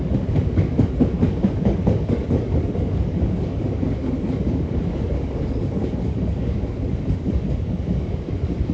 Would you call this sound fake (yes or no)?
yes